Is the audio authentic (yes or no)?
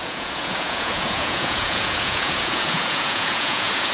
no